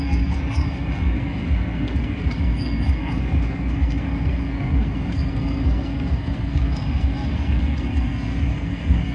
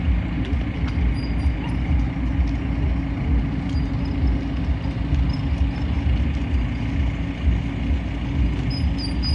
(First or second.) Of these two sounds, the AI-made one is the first